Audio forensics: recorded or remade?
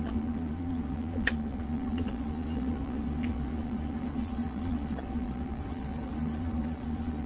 remade